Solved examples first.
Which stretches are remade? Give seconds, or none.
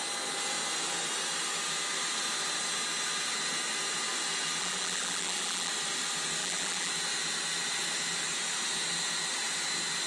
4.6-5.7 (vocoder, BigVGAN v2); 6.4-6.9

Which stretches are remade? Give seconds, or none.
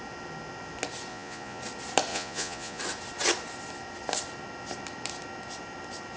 1.1-1.6 (vocoder, Vocos); 2.1-2.8